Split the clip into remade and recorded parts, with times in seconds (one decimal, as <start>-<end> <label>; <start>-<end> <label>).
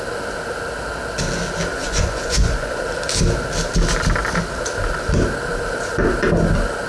0.0-1.7 recorded; 1.7-2.8 remade; 2.8-6.9 recorded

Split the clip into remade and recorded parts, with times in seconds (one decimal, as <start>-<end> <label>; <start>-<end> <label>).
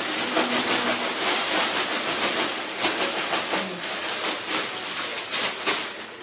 0.0-6.2 recorded